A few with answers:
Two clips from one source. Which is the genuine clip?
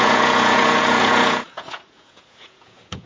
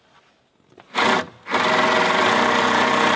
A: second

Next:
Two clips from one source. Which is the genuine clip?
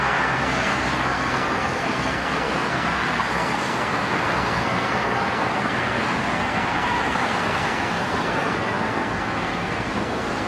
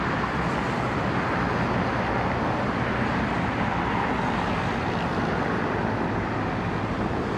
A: second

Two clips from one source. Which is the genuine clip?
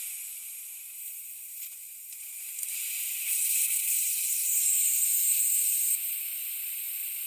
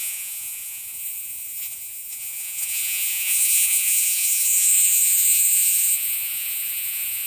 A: first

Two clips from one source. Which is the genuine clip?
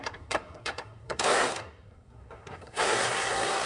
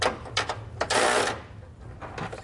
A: second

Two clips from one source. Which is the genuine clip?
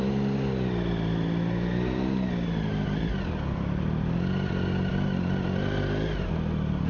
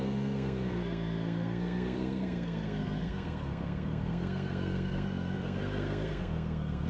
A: first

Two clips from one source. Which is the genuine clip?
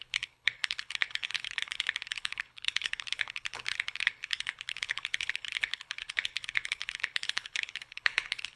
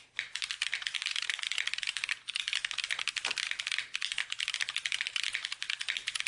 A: second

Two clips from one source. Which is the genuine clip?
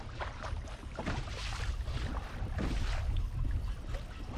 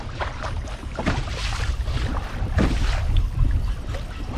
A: first